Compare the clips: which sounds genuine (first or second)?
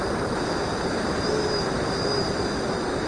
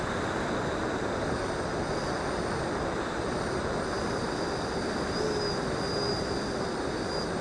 second